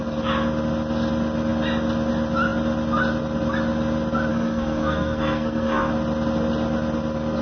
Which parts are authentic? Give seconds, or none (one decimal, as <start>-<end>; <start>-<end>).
0.0-4.3; 5.9-7.4